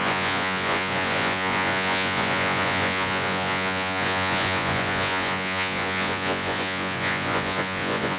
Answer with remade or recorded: remade